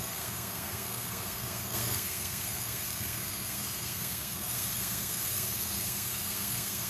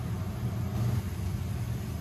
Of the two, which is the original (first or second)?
second